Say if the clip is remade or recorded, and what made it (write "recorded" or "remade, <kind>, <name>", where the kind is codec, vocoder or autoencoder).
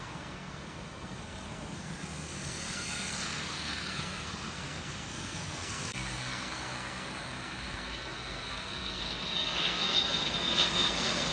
remade, codec, SNAC